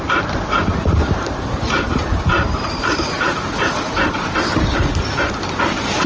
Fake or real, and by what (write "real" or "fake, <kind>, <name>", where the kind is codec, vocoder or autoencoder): fake, vocoder, BigVGAN v2